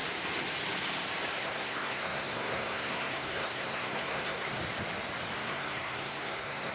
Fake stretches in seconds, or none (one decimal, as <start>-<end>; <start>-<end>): 1.4-4.6; 5.4-6.7